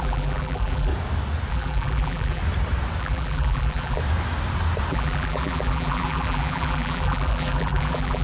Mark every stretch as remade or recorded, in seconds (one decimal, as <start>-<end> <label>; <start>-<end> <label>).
0.0-0.9 remade; 0.9-1.5 recorded; 1.5-2.4 remade; 2.4-3.0 recorded; 3.0-4.0 remade; 4.0-4.9 recorded; 4.9-8.2 remade